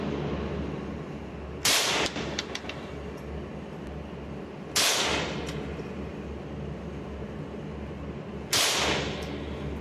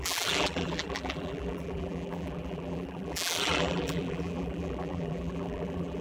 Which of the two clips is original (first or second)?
first